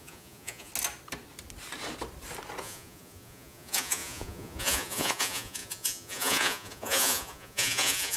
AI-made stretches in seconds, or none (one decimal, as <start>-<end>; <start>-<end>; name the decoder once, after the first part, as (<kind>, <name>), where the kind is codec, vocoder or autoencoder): 0.0-0.7 (vocoder, Vocos); 2.6-8.2